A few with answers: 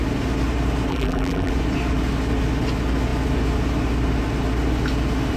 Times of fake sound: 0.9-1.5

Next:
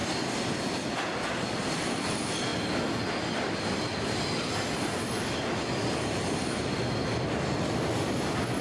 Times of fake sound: 0.0-0.5

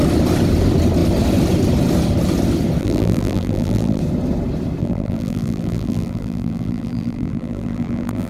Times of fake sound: 2.8-4.0; 4.8-8.3

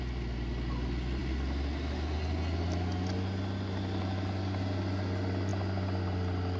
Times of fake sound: none

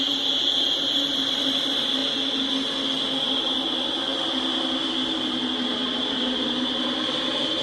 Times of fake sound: 0.0-2.0; 3.3-4.1; 4.9-7.6

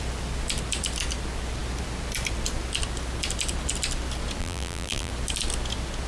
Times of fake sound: 4.4-5.1